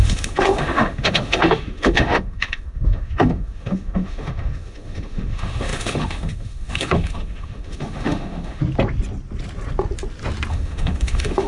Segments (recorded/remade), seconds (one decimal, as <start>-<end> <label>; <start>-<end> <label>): 0.0-8.6 remade; 8.6-10.5 recorded; 10.5-11.5 remade